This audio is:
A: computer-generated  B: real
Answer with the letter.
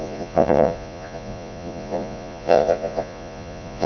A